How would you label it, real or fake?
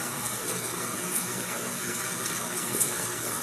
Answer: fake